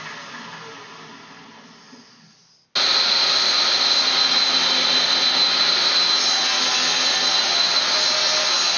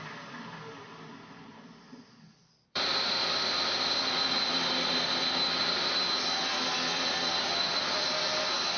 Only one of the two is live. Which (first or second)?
first